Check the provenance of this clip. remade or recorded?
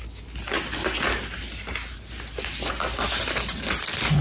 recorded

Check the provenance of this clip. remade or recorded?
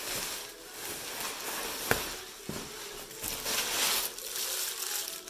recorded